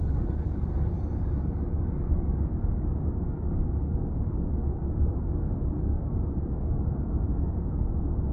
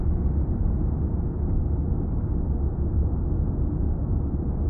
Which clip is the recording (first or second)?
second